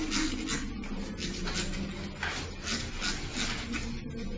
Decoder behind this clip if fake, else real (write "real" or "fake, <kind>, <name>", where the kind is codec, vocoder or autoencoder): real